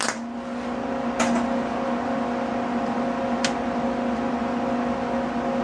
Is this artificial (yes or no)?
no